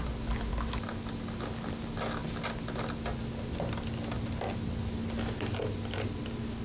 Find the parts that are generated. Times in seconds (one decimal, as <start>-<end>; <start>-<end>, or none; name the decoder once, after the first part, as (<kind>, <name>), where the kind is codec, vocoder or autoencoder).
none